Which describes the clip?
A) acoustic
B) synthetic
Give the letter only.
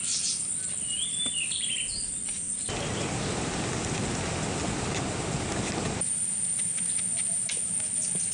A